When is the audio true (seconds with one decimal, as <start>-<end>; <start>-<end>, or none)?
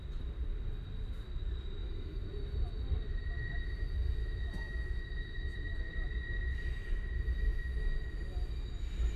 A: 0.0-1.8; 2.3-4.2; 5.8-9.2